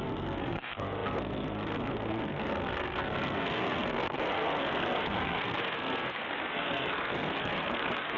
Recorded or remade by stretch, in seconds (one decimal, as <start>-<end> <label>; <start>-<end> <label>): 0.0-8.2 remade

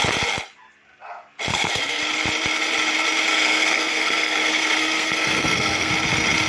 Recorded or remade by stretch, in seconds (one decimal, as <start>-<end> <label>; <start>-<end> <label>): 0.0-1.5 recorded; 1.5-2.0 remade; 2.0-3.3 recorded; 3.3-5.9 remade; 5.9-6.5 recorded

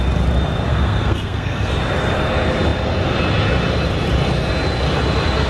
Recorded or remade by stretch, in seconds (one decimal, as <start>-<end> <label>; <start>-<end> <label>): 0.0-0.7 recorded; 0.7-1.7 remade; 1.7-5.5 recorded

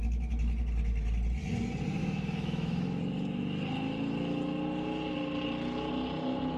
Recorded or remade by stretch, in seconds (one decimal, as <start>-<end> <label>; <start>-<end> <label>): 0.0-2.0 recorded; 2.0-3.0 remade; 3.0-6.6 recorded

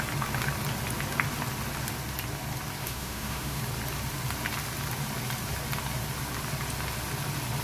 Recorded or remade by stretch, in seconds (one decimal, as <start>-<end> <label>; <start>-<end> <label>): 0.0-2.8 recorded; 2.8-3.6 remade; 3.6-7.6 recorded

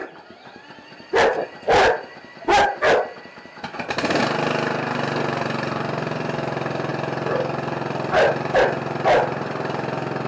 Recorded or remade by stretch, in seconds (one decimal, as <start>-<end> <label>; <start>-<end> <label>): 0.0-10.3 recorded

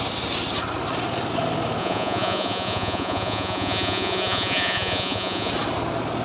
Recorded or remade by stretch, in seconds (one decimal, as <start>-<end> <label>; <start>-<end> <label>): 0.0-1.8 recorded; 1.8-5.5 remade; 5.5-6.2 recorded

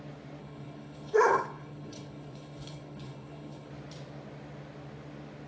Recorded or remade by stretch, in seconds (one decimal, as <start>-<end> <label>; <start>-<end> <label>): 0.0-0.4 recorded; 0.4-3.7 remade; 3.7-5.5 recorded